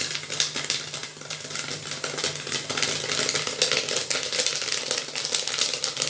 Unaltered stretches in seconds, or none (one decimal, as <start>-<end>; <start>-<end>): 0.0-6.1